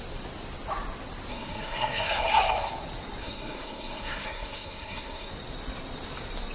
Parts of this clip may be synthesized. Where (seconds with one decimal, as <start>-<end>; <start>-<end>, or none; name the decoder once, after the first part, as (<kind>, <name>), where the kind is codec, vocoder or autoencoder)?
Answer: 1.3-2.7 (codec, SNAC); 3.2-5.3